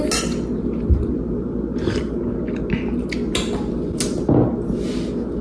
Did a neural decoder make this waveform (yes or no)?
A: no